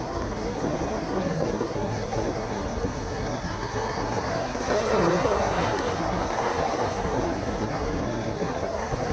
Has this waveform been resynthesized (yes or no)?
yes